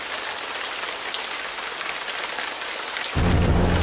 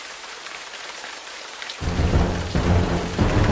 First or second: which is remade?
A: second